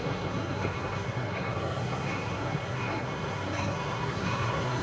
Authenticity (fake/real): fake